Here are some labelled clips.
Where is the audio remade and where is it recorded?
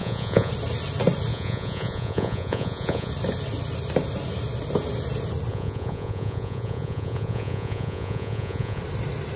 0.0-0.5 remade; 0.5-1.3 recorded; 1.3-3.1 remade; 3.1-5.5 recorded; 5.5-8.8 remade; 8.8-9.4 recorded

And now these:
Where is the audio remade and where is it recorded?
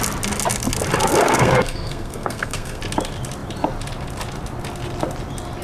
0.0-1.1 recorded; 1.1-2.8 remade; 2.8-5.6 recorded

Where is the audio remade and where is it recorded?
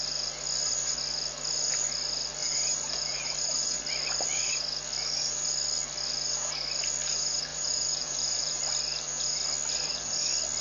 0.0-2.4 recorded; 2.4-3.8 remade; 3.8-7.5 recorded; 7.5-8.6 remade; 8.6-10.6 recorded